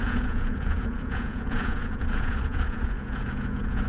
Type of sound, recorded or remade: remade